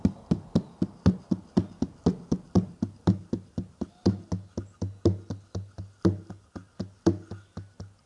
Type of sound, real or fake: real